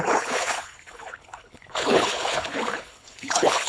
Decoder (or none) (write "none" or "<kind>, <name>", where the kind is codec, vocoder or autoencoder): codec, HILCodec